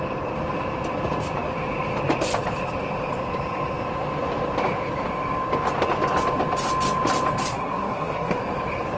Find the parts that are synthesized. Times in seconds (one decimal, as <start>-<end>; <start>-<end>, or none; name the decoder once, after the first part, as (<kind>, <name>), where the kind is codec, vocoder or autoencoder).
7.5-8.4 (codec, SNAC)